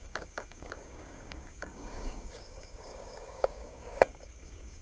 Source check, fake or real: fake